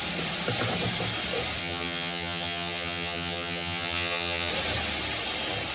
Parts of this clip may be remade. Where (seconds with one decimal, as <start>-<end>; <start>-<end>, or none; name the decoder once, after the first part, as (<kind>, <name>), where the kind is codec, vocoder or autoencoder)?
1.6-4.5 (vocoder, HiFi-GAN)